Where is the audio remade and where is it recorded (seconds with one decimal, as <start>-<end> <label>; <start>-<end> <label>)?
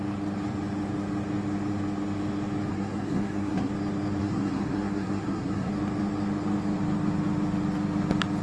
0.0-2.7 recorded; 2.7-3.7 remade; 3.7-4.2 recorded; 4.2-5.7 remade; 5.7-8.4 recorded